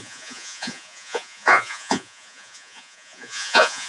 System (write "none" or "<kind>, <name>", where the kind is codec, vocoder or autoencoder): vocoder, Vocos